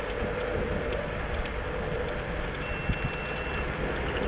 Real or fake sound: real